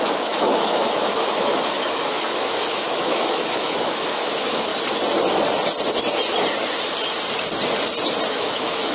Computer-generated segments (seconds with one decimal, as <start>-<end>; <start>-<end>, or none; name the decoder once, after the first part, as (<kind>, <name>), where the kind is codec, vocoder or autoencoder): 0.0-4.7 (autoencoder, DAC-VAE); 8.3-8.9